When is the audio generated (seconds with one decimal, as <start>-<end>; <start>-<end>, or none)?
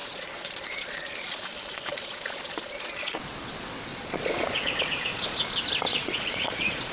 0.0-3.2; 3.9-5.4; 5.9-6.9